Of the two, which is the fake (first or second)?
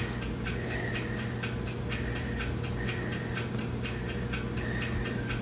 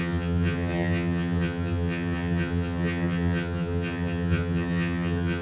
second